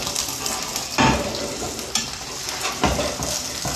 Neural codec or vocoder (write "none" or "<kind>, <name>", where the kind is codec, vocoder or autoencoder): none